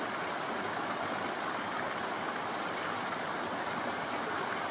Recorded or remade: recorded